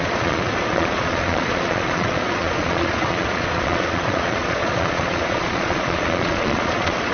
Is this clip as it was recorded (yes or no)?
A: no